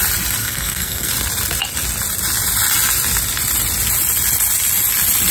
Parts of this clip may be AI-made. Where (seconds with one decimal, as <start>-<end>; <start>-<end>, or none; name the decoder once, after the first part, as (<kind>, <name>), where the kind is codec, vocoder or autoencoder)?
0.4-1.1 (codec, SNAC)